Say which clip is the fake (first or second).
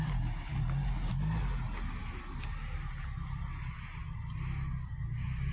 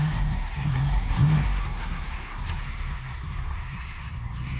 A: second